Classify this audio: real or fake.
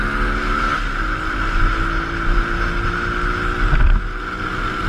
real